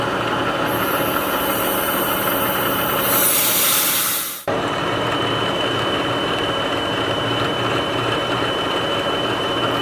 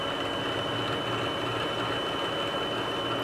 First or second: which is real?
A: second